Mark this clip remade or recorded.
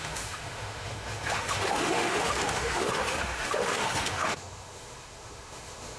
remade